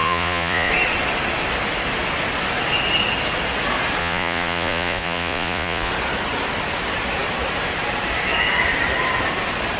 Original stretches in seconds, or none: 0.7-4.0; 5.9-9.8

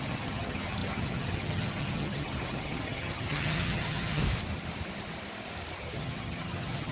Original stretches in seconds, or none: 4.2-5.8

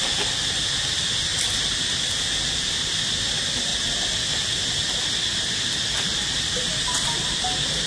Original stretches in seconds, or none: 0.0-1.3; 2.1-7.9

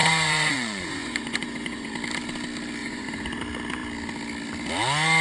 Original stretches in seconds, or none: 1.9-2.8; 3.4-5.2

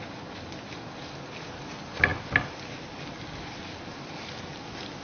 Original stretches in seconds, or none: 0.0-5.0

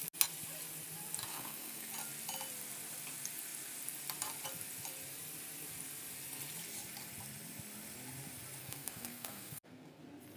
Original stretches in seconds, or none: 0.0-1.3; 1.9-8.6; 10.0-10.4

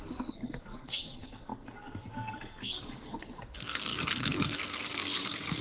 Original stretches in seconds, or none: none

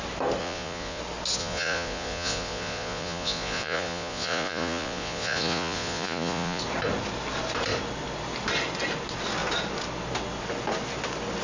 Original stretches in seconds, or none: 0.0-0.4; 1.0-1.4; 6.6-11.4